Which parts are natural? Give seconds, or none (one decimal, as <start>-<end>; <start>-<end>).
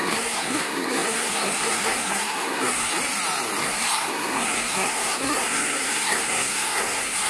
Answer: 2.9-3.6